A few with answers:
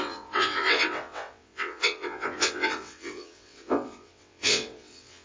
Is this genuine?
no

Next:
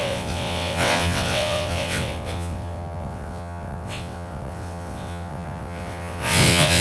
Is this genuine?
no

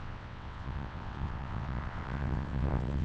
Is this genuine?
no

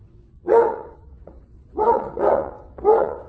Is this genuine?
no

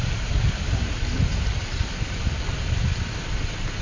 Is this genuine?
yes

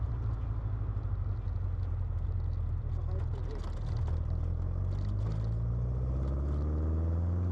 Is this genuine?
yes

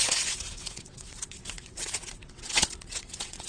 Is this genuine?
no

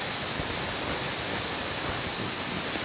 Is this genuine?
yes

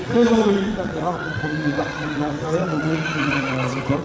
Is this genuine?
no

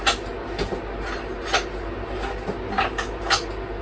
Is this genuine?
yes